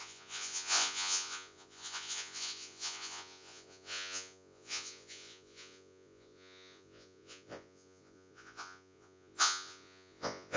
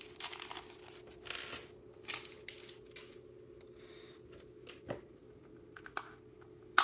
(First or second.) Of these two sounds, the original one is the second